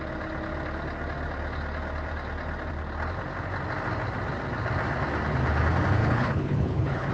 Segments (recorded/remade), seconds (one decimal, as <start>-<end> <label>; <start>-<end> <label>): 0.0-6.0 recorded; 6.0-7.1 remade

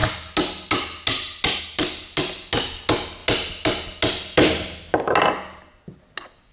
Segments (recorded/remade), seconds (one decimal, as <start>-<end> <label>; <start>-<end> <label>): 0.0-6.5 recorded

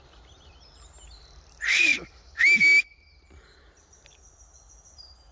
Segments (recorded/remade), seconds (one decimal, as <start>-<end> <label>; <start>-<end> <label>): 0.0-5.3 recorded

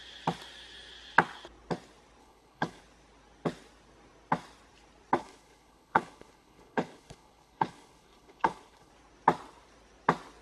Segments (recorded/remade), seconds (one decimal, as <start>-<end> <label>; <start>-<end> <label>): 0.0-2.2 recorded; 2.2-2.8 remade; 2.8-5.2 recorded; 5.2-8.9 remade; 8.9-10.4 recorded

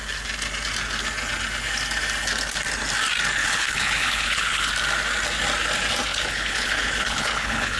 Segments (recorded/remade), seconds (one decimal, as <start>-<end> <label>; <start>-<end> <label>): 0.0-3.4 recorded; 3.4-4.7 remade; 4.7-6.1 recorded; 6.1-7.8 remade